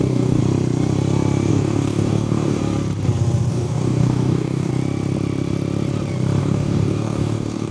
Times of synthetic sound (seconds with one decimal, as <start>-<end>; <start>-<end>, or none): 0.0-0.4; 1.5-2.6; 3.5-4.7; 6.4-7.7